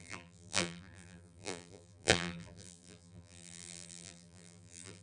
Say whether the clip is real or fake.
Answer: fake